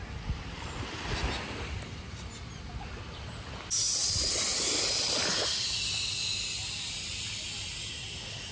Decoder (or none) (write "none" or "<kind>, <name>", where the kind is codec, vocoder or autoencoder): none